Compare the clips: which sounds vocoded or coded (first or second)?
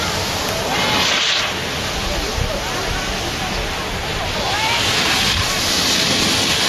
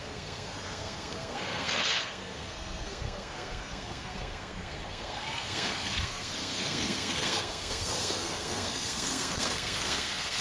second